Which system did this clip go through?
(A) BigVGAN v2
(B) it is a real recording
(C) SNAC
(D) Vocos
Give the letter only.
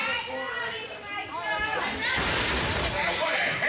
B